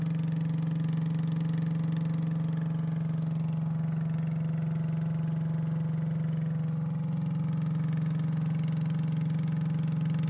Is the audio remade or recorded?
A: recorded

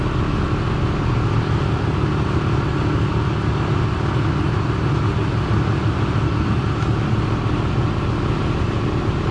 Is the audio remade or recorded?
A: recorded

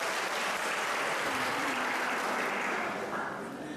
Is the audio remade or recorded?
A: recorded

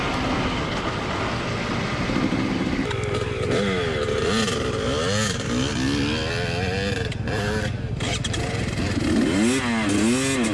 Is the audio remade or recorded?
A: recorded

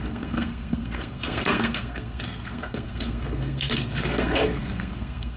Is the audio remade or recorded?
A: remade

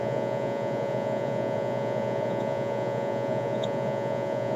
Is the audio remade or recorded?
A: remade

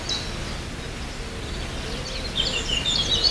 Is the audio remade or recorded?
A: recorded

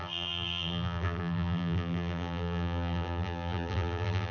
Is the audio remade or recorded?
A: remade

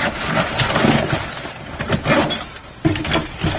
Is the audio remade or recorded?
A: recorded